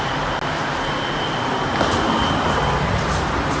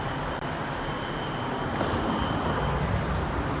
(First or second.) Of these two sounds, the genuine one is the first